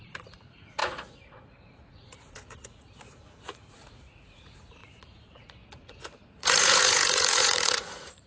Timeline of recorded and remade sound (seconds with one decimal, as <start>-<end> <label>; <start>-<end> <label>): 0.0-8.3 remade